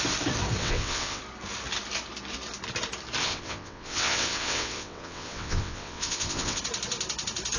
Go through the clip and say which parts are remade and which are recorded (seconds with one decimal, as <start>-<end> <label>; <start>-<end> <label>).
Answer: 0.0-0.6 recorded; 0.6-1.2 remade; 1.2-3.2 recorded; 3.2-6.6 remade; 6.6-7.6 recorded